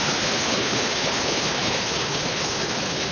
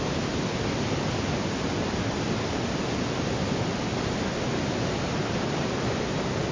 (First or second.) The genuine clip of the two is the second